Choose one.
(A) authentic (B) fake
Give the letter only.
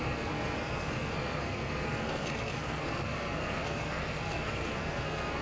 B